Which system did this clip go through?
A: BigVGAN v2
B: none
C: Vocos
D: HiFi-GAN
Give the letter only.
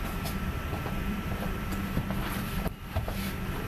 A